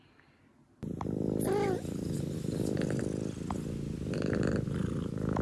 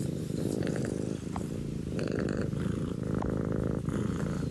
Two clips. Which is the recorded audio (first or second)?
first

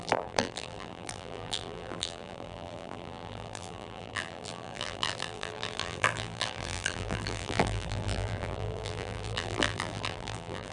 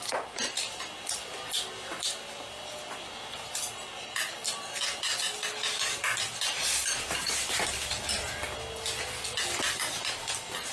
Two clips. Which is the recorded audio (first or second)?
second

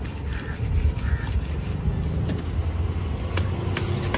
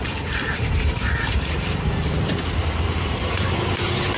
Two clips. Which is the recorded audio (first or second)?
first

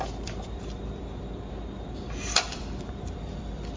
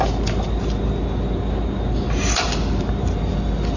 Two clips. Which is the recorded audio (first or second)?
second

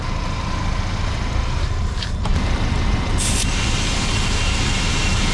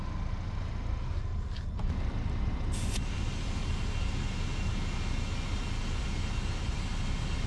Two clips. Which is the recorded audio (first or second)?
second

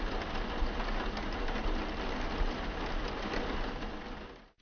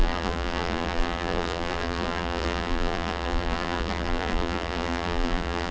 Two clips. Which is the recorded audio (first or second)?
first